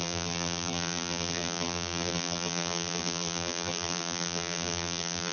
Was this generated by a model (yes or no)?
yes